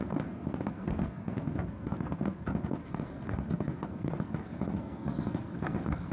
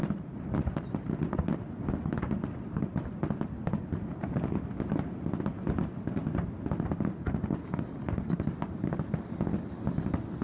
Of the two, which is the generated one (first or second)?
first